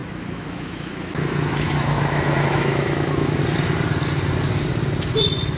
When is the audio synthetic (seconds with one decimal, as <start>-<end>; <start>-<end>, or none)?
0.0-3.4